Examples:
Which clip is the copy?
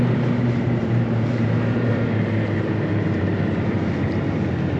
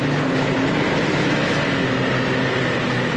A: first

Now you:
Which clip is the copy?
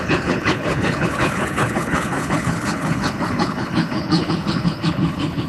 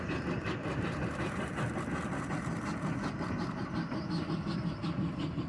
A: first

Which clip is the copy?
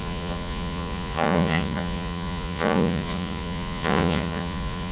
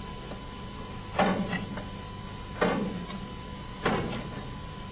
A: first